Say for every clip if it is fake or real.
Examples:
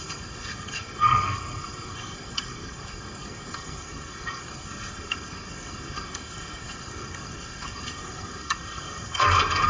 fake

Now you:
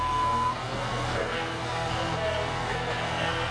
fake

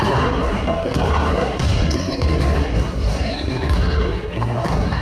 fake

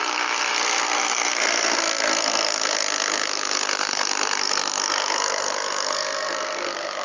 fake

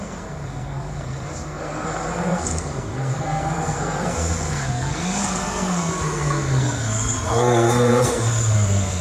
fake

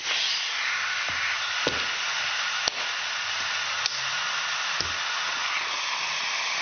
real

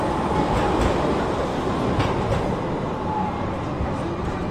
real